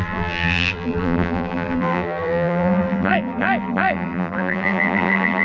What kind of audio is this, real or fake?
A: fake